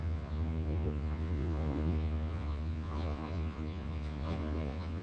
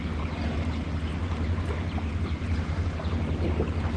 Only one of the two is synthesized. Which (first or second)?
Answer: first